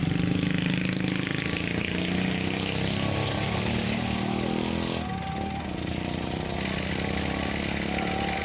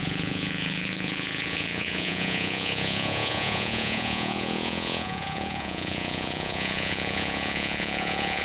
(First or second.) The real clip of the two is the first